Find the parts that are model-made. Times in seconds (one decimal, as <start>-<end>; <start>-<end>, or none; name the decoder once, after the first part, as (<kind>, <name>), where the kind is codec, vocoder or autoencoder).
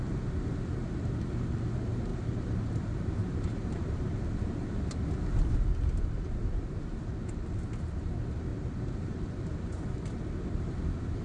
2.1-4.1 (vocoder, BigVGAN v2); 8.5-9.9